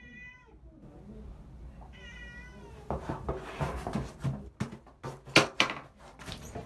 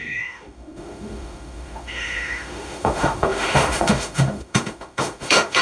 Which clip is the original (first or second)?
first